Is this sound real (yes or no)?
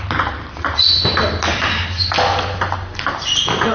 yes